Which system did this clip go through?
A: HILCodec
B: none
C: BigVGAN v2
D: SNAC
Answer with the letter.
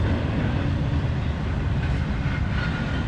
B